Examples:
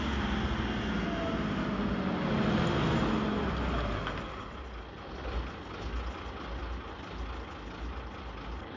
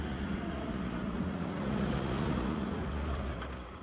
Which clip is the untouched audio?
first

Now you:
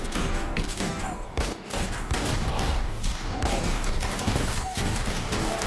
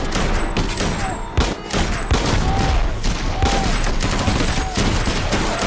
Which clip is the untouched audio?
second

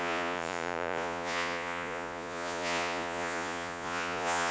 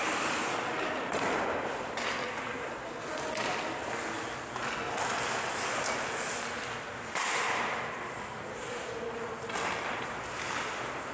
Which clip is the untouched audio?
second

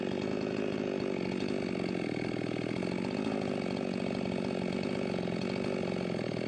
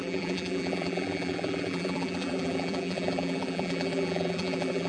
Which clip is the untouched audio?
first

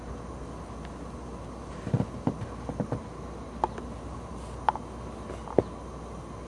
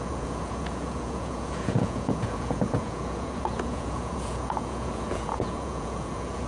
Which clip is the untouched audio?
first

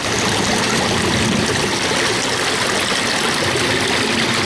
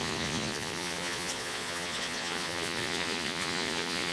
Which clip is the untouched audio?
first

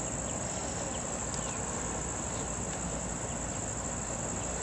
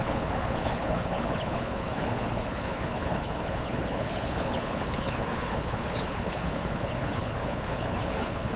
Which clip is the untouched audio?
first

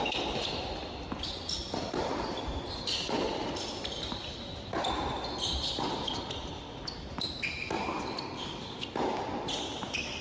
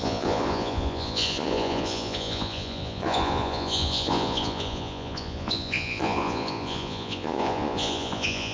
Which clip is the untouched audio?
first